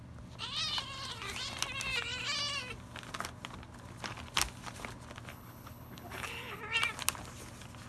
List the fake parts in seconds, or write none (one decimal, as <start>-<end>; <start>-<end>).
5.3-6.6